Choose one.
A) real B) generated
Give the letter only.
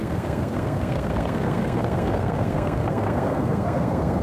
B